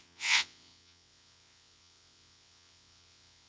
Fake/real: fake